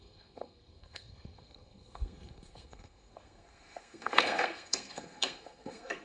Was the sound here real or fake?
fake